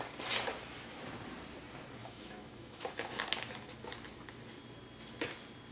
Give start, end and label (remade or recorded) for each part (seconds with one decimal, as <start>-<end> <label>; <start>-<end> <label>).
0.0-2.0 recorded; 2.0-3.2 remade; 3.2-5.7 recorded